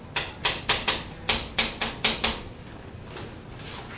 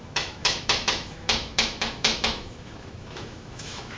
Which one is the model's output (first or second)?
second